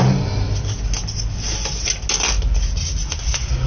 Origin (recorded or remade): recorded